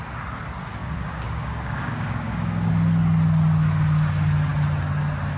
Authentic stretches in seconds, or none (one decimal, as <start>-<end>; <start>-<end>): 0.0-0.8; 2.7-5.4